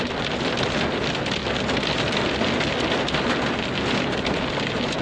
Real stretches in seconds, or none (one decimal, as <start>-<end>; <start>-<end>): 0.0-5.0